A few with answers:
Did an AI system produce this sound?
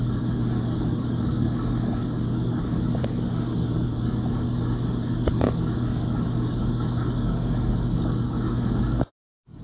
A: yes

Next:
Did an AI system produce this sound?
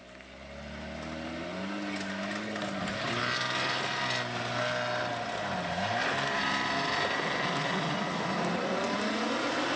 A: no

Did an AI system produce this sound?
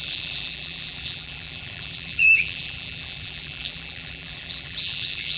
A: yes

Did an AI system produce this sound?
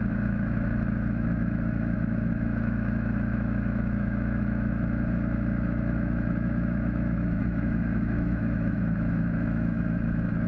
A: yes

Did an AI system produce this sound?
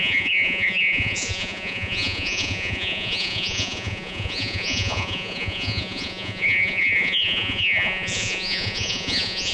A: yes